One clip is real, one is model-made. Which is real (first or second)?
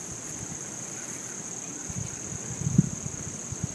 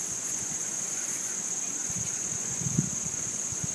first